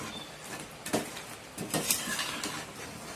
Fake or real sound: real